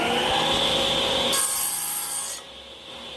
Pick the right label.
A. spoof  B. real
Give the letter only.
B